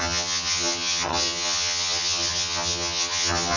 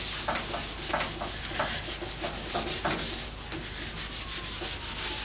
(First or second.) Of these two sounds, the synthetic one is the first